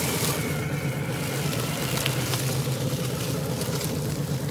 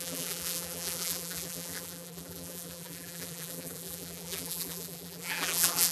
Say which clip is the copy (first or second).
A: second